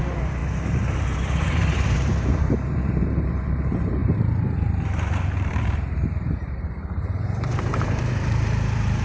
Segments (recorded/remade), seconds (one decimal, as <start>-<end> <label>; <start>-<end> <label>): 0.0-9.0 remade